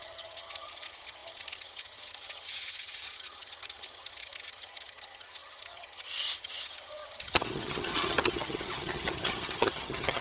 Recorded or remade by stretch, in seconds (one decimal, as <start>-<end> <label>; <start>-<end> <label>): 0.0-10.2 remade